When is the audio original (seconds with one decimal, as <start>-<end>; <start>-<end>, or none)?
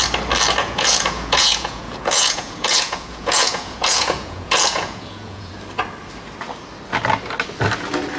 0.0-0.6; 5.5-8.2